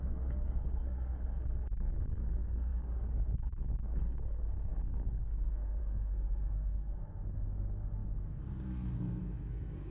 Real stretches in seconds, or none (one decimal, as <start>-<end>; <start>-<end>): none